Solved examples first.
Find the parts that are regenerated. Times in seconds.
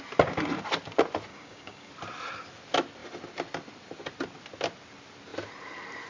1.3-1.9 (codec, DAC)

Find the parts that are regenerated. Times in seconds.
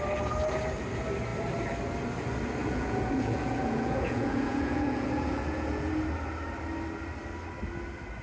2.6-5.9 (vocoder, Vocos)